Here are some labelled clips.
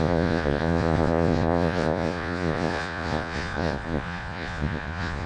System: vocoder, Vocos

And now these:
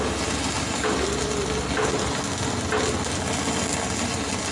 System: none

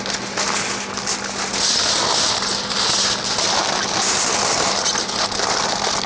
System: none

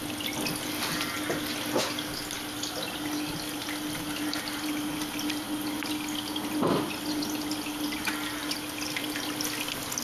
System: none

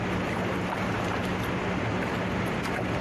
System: none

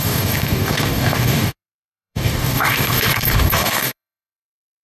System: codec, DAC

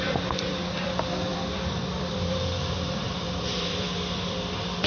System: vocoder, BigVGAN v2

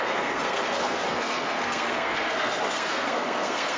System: codec, SNAC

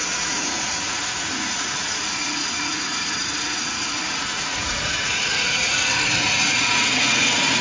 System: vocoder, Vocos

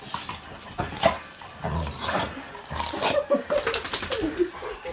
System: none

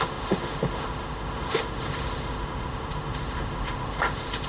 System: autoencoder, DAC-VAE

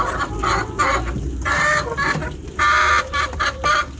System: none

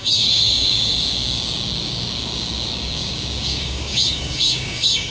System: codec, DAC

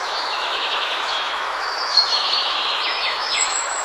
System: autoencoder, DAC-VAE